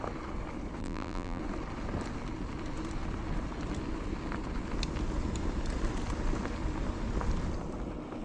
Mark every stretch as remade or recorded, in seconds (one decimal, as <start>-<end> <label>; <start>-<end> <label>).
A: 0.0-0.8 recorded; 0.8-1.4 remade; 1.4-8.2 recorded